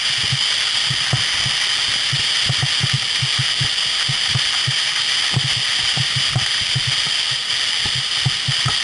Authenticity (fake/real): real